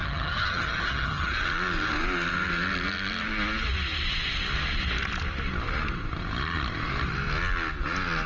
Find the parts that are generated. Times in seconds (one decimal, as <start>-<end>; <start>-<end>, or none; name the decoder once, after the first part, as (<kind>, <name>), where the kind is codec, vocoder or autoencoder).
0.0-1.4 (vocoder, HiFi-GAN)